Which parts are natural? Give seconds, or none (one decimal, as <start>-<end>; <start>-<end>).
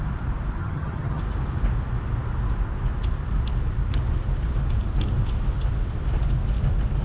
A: 0.0-0.6; 1.2-7.0